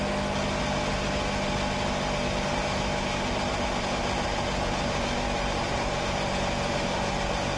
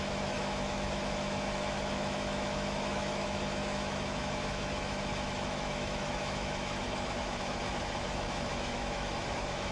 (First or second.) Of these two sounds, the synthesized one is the second